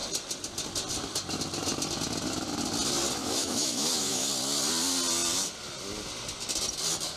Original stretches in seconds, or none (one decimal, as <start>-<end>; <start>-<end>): 0.0-3.2; 4.3-7.2